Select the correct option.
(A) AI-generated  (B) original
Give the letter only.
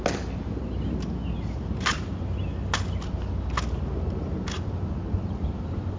B